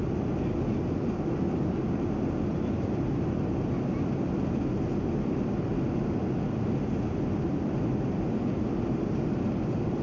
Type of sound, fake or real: real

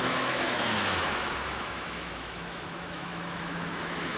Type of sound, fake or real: fake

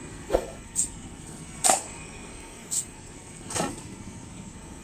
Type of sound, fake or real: fake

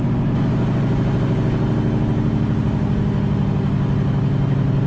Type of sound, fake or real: real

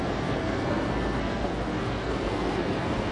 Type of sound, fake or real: fake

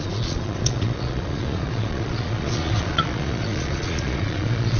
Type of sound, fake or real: fake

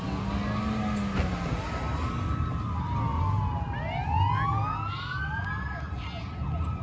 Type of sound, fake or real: real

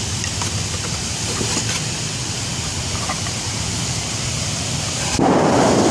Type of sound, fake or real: real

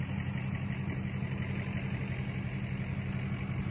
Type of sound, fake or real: real